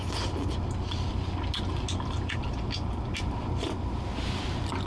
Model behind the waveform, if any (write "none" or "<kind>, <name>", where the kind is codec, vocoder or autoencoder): none